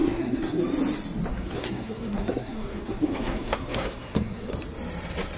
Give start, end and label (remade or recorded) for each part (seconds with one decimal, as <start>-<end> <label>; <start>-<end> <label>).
0.0-0.6 remade; 0.6-1.3 recorded; 1.3-4.5 remade; 4.5-5.4 recorded